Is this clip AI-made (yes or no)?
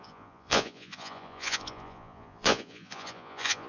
yes